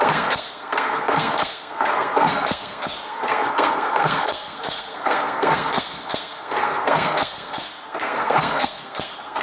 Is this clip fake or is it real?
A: fake